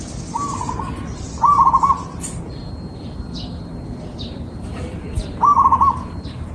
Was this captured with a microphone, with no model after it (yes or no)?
yes